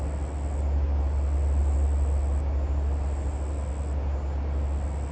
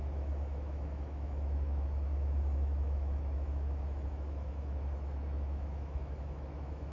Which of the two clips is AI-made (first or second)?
second